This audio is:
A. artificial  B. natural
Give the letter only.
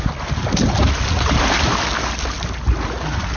B